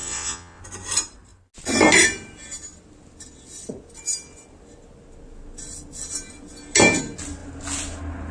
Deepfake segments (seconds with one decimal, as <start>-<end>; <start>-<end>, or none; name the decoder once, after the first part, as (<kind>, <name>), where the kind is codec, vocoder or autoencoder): 0.0-0.6 (vocoder, WaveNeXt)